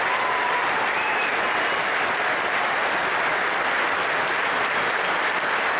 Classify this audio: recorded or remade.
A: recorded